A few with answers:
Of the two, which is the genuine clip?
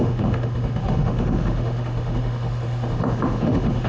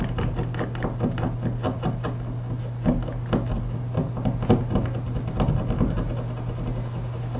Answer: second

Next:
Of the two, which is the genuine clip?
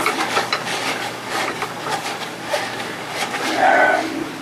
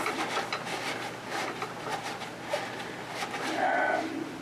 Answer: second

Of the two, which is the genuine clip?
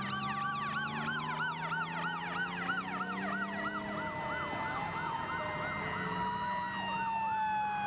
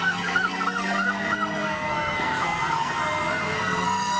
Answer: first